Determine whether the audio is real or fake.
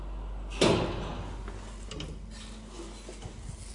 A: real